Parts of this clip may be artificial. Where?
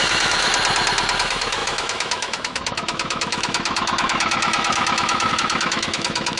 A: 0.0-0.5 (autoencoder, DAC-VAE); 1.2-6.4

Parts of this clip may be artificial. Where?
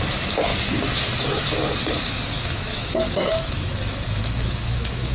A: 0.0-0.5 (autoencoder, DAC-VAE); 2.4-5.1